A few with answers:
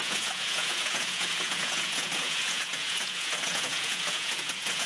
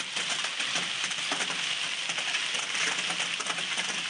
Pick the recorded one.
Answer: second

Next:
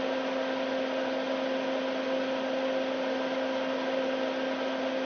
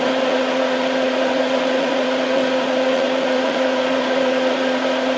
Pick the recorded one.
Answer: first